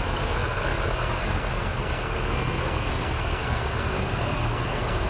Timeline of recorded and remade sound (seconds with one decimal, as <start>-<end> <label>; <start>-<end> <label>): 0.0-5.1 remade